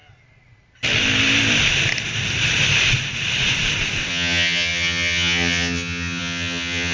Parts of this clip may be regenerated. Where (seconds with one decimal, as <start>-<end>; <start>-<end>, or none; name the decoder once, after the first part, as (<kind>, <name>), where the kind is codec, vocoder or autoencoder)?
4.1-6.9 (vocoder, HiFi-GAN)